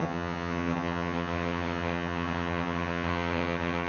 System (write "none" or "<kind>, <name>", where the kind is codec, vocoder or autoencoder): vocoder, HiFi-GAN